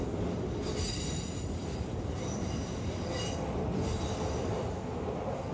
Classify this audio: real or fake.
real